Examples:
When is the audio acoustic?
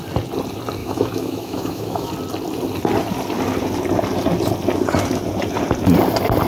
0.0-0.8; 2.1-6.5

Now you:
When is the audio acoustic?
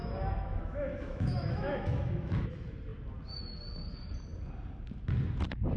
2.5-5.8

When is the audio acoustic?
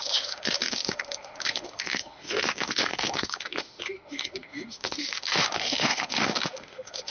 none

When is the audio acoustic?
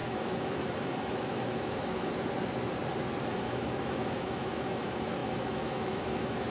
2.1-3.2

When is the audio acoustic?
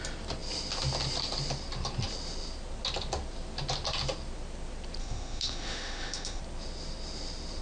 0.0-5.0; 6.4-7.6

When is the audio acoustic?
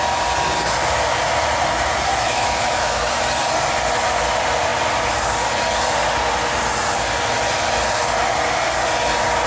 0.0-2.1; 3.0-9.5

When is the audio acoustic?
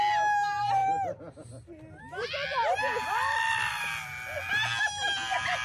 0.0-5.6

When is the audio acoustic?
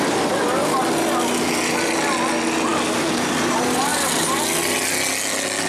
0.0-5.7